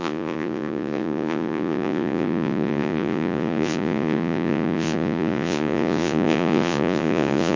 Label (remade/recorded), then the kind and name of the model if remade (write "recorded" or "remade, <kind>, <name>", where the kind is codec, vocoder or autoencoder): remade, vocoder, Vocos